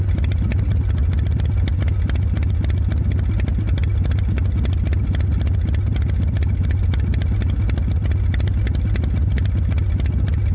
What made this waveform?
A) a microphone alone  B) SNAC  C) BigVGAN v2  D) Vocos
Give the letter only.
A